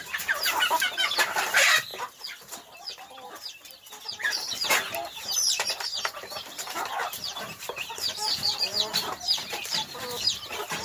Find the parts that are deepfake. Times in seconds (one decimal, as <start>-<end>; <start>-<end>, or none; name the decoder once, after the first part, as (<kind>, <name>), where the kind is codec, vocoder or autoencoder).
0.0-1.9 (vocoder, BigVGAN v2); 4.3-10.8